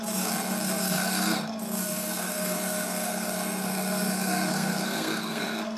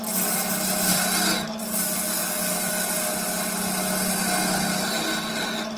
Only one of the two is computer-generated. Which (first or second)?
first